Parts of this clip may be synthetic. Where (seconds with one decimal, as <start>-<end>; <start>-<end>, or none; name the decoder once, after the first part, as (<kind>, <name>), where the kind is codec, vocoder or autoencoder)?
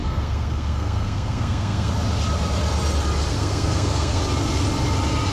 0.0-1.9 (codec, SNAC); 3.3-4.2